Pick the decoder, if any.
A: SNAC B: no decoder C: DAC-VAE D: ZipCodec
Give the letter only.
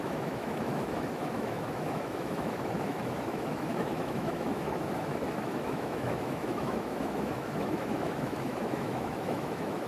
C